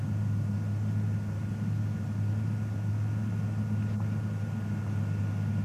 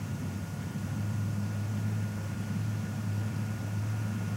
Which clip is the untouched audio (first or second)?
first